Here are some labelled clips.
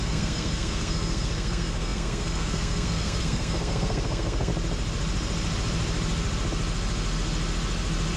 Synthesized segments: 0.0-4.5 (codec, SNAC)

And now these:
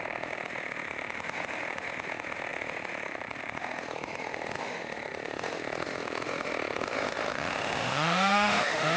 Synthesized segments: 0.0-9.0 (autoencoder, DAC-VAE)

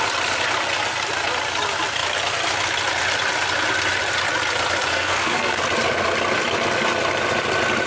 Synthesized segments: 4.9-5.6 (codec, SNAC)

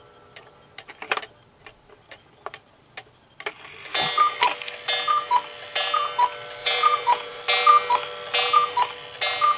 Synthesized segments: 6.6-7.4 (vocoder, Vocos)